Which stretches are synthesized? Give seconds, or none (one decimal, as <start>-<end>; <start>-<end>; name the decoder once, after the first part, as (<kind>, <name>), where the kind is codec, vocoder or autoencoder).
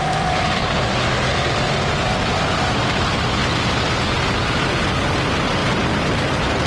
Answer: 0.0-0.6 (vocoder, BigVGAN v2); 1.9-3.4; 4.6-6.7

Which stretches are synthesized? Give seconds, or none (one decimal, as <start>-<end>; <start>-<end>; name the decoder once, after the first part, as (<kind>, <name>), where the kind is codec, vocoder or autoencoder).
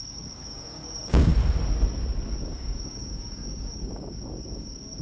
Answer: 0.0-1.3 (codec, DAC); 2.4-5.0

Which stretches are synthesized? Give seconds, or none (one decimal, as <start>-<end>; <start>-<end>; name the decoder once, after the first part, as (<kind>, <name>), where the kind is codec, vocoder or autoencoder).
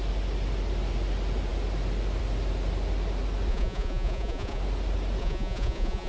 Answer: 3.5-4.6 (vocoder, Vocos); 5.2-6.1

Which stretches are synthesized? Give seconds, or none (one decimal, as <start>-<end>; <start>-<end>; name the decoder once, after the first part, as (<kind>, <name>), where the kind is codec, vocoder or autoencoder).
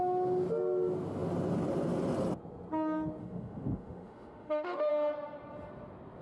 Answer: 3.2-4.9 (autoencoder, DAC-VAE)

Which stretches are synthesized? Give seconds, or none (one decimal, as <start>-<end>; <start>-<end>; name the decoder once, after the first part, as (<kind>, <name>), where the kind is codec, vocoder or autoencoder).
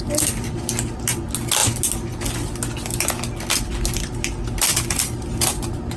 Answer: none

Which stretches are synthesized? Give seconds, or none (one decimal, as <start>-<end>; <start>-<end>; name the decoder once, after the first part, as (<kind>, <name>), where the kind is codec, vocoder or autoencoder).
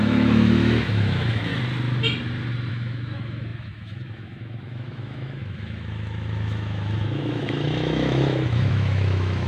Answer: 0.0-1.5 (autoencoder, DAC-VAE); 2.7-9.5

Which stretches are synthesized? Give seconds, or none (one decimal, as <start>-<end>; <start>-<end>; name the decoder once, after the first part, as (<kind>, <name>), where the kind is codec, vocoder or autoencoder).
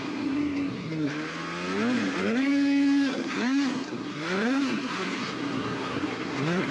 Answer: 0.0-1.1 (codec, SNAC); 2.2-6.7